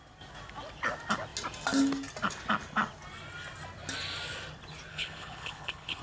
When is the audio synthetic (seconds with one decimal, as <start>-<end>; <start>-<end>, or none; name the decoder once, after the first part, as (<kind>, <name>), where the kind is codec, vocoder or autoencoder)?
4.9-6.0 (codec, HILCodec)